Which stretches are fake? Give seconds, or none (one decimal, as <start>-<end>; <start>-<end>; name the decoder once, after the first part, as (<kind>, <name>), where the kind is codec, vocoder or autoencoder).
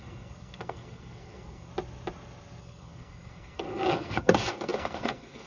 0.0-1.7 (codec, SNAC); 2.6-5.5